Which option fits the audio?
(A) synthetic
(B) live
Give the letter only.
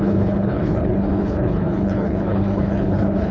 A